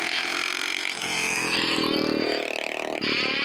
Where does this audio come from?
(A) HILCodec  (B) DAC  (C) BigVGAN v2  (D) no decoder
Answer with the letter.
D